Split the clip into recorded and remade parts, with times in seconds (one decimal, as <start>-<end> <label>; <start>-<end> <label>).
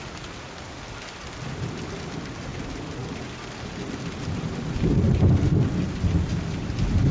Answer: 0.0-7.1 recorded